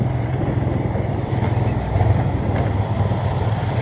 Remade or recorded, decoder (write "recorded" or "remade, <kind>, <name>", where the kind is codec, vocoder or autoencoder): remade, vocoder, BigVGAN v2